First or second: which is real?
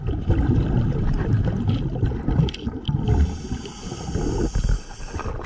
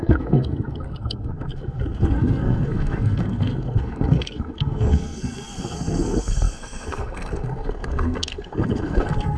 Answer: first